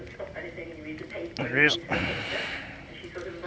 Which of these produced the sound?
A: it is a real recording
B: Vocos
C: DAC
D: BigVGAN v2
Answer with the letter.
A